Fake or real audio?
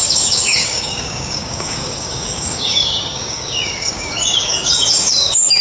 fake